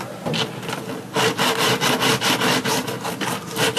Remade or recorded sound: recorded